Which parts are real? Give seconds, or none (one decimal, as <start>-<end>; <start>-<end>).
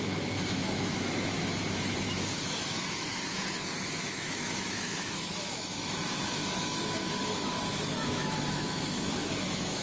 none